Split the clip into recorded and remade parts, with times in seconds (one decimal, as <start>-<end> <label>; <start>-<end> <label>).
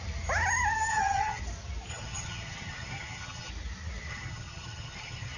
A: 0.0-0.9 recorded; 0.9-1.4 remade; 1.4-1.9 recorded; 1.9-3.5 remade; 3.5-4.1 recorded; 4.1-5.4 remade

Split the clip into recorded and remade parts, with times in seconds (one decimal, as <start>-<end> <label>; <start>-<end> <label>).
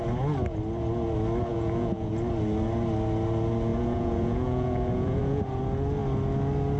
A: 0.0-1.5 recorded; 1.5-2.1 remade; 2.1-3.7 recorded; 3.7-5.4 remade; 5.4-6.8 recorded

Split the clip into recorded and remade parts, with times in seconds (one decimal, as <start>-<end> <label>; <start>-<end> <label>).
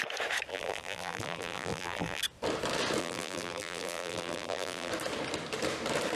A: 0.0-0.5 recorded; 0.5-2.2 remade; 2.2-3.0 recorded; 3.0-4.9 remade; 4.9-6.2 recorded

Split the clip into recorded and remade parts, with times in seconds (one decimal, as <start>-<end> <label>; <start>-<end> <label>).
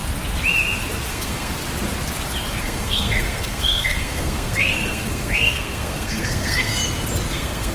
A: 0.0-1.1 recorded; 1.1-1.6 remade; 1.6-2.6 recorded; 2.6-6.8 remade; 6.8-7.3 recorded; 7.3-7.7 remade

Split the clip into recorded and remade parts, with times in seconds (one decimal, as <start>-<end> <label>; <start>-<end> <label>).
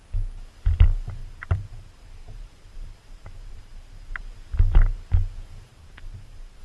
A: 0.0-1.2 recorded; 1.2-4.2 remade; 4.2-5.7 recorded; 5.7-6.6 remade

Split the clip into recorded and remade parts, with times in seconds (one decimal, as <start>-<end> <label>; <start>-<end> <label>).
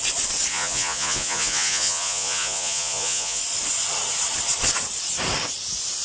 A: 0.0-0.5 recorded; 0.5-3.4 remade; 3.4-6.0 recorded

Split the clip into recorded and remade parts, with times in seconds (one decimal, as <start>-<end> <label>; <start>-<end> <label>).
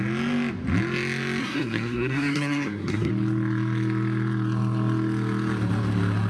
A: 0.0-1.4 recorded; 1.4-3.1 remade; 3.1-6.3 recorded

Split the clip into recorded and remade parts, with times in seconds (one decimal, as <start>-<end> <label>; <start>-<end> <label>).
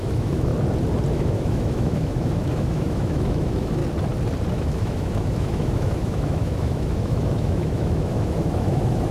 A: 0.0-0.5 remade; 0.5-1.1 recorded; 1.1-3.8 remade; 3.8-4.5 recorded; 4.5-9.1 remade